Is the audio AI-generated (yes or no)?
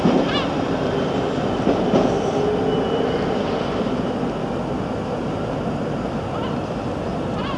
yes